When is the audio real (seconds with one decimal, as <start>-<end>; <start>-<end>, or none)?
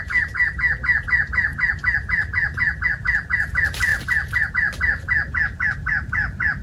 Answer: 0.0-6.6